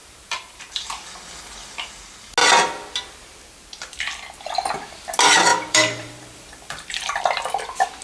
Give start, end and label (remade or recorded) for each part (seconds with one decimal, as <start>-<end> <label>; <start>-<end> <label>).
0.0-1.0 remade; 1.0-5.5 recorded; 5.5-7.2 remade; 7.2-8.0 recorded